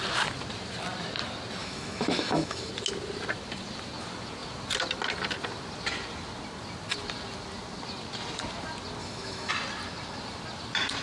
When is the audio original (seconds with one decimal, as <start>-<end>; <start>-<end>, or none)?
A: 0.0-1.6; 2.7-9.0; 9.5-11.0

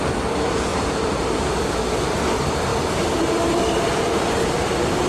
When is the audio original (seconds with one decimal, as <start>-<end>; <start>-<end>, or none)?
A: 0.0-5.1

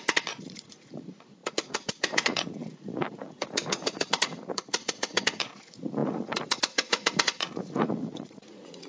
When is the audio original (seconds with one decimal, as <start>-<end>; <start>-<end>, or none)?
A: none

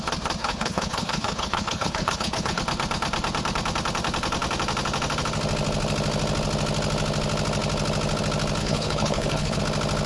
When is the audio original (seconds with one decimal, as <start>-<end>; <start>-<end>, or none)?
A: 0.0-0.4; 2.6-8.6; 9.6-10.1

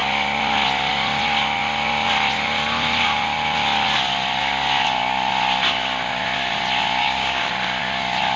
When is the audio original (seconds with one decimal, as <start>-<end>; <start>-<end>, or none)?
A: 0.0-7.0; 7.5-8.4

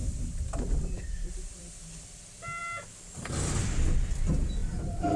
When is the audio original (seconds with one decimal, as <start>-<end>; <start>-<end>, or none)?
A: 1.7-5.2

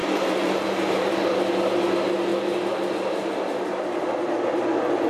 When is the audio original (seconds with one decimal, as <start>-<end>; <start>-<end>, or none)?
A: 1.1-2.3; 2.9-5.1